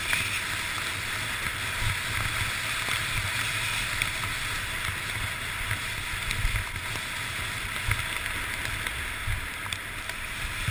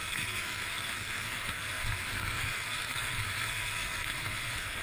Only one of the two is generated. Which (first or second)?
second